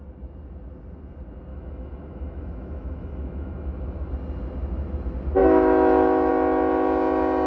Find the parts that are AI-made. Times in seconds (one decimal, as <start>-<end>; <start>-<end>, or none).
1.5-4.1; 5.4-6.3

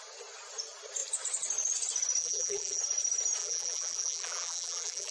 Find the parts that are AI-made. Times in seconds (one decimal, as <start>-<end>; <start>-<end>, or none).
2.2-2.8; 3.4-5.1

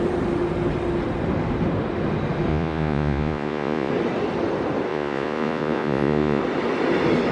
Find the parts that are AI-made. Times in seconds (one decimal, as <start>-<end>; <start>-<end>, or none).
2.5-3.9; 4.9-6.4

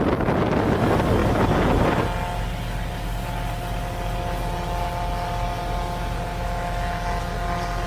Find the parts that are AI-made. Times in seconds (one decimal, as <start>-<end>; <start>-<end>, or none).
6.3-6.9